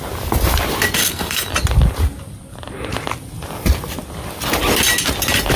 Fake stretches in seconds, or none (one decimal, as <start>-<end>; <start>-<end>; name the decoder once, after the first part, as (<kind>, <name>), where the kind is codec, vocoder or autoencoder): 1.0-1.5 (codec, SNAC)